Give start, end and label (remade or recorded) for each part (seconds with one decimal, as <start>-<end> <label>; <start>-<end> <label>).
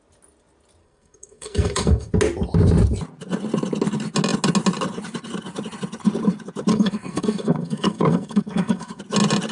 0.0-0.8 recorded; 0.8-2.1 remade; 2.1-6.7 recorded; 6.7-9.0 remade; 9.0-9.5 recorded